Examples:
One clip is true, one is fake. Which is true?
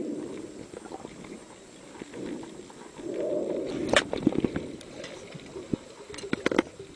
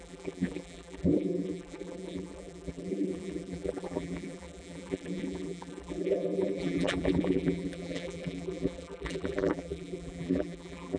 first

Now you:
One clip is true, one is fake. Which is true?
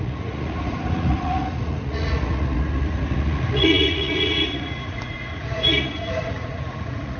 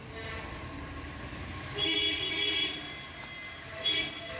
second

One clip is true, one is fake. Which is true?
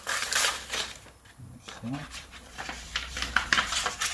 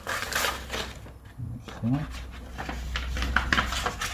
second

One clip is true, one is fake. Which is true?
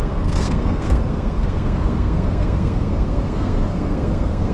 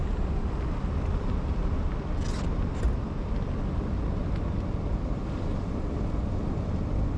second